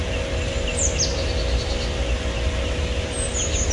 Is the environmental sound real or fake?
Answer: real